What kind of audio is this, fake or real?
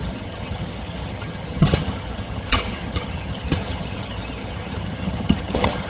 fake